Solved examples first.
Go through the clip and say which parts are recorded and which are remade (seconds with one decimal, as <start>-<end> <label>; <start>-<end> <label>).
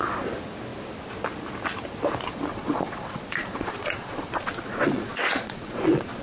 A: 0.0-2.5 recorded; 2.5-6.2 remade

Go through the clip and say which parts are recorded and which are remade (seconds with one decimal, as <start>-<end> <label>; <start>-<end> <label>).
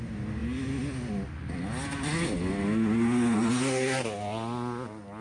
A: 0.0-5.2 recorded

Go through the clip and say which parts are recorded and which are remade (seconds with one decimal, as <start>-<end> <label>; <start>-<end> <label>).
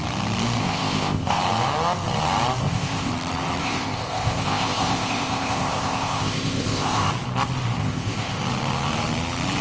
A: 0.0-0.6 recorded; 0.6-1.4 remade; 1.4-2.6 recorded; 2.6-3.1 remade; 3.1-3.6 recorded; 3.6-7.1 remade; 7.1-7.8 recorded; 7.8-8.4 remade; 8.4-9.6 recorded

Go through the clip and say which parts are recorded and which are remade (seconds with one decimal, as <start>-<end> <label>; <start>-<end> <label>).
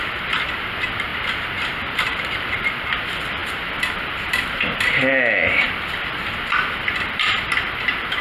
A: 0.0-8.2 recorded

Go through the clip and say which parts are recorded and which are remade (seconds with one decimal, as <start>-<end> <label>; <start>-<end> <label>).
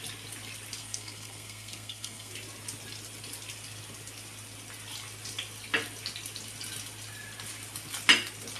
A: 0.0-0.8 recorded; 0.8-2.3 remade; 2.3-8.6 recorded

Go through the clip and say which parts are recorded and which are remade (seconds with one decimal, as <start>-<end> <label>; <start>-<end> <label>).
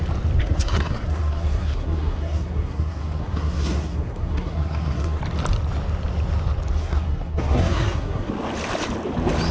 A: 0.0-0.4 recorded; 0.4-5.2 remade; 5.2-6.8 recorded; 6.8-8.3 remade; 8.3-9.5 recorded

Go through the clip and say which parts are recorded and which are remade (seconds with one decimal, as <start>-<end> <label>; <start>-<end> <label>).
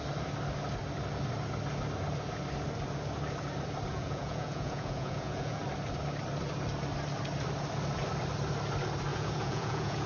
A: 0.0-3.9 recorded; 3.9-5.6 remade; 5.6-9.1 recorded; 9.1-10.1 remade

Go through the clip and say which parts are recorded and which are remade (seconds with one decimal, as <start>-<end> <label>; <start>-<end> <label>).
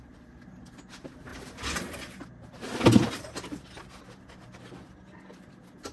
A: 0.0-5.9 recorded